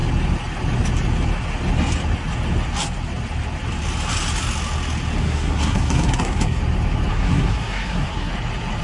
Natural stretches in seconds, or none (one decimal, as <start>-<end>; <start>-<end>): 0.0-5.2; 6.6-7.1; 8.3-8.8